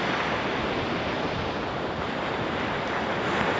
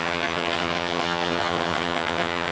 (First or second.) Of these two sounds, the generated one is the second